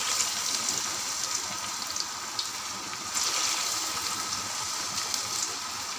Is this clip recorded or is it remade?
recorded